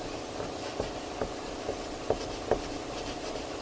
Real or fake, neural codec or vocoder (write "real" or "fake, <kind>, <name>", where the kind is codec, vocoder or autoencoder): real